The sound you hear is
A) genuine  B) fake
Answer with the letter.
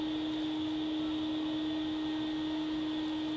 A